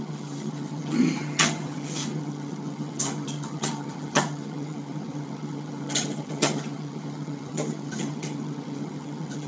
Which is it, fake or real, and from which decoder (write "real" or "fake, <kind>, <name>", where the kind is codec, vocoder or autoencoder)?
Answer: fake, vocoder, HiFi-GAN